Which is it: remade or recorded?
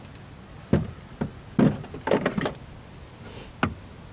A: recorded